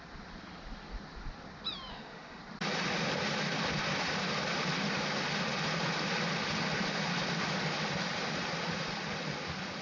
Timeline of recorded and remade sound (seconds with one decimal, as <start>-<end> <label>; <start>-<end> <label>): 0.0-1.9 recorded; 1.9-2.4 remade; 2.4-9.8 recorded